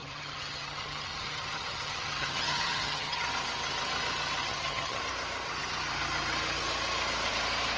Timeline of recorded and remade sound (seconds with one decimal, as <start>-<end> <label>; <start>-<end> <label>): 0.0-3.3 remade; 3.3-4.4 recorded; 4.4-5.0 remade; 5.0-7.8 recorded